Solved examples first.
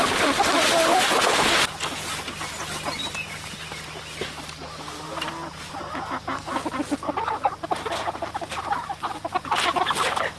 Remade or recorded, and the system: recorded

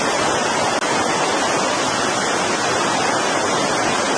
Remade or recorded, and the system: recorded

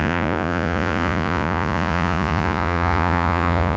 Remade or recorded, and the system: remade, vocoder, Vocos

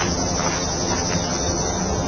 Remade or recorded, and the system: recorded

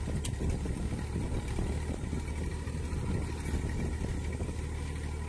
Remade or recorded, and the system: recorded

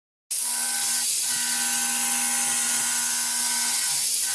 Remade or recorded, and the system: recorded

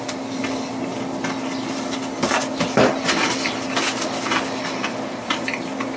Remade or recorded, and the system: recorded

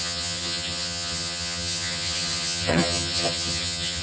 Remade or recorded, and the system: remade, vocoder, HiFi-GAN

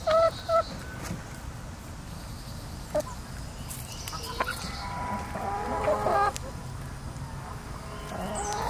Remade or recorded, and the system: recorded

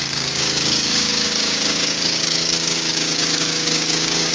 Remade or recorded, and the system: remade, codec, DAC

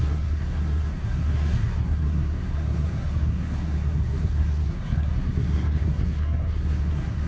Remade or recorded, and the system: remade, codec, SNAC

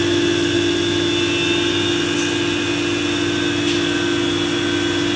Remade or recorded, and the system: recorded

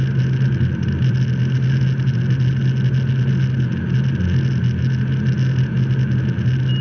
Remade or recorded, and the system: recorded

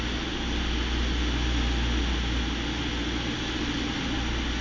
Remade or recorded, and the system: recorded